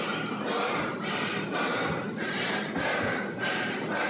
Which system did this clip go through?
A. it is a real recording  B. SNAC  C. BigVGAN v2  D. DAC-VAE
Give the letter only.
C